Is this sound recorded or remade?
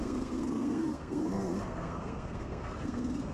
remade